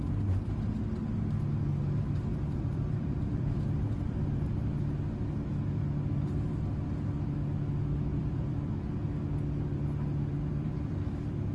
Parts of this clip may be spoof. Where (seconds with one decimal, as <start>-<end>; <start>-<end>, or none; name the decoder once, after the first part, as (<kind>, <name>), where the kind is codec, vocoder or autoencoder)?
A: 2.3-4.6 (vocoder, BigVGAN v2); 8.1-8.7; 10.3-11.5